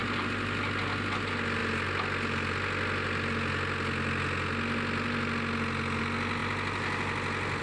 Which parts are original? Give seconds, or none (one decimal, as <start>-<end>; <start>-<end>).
0.0-7.6